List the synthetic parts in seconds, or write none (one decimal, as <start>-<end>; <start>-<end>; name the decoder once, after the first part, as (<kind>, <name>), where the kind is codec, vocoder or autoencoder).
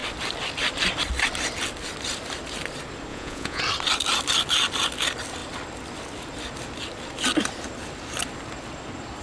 3.1-3.6 (vocoder, Vocos)